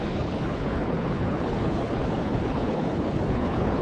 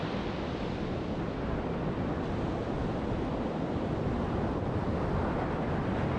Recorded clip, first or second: second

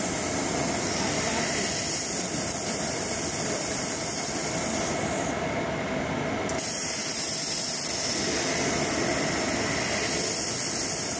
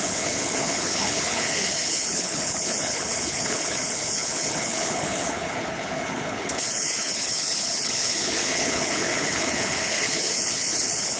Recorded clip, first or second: first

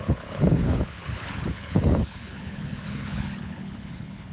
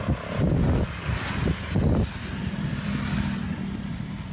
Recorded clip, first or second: second